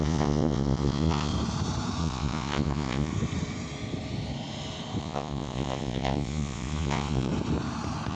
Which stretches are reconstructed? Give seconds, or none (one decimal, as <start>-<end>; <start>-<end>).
0.0-1.3; 2.0-3.1; 5.0-7.3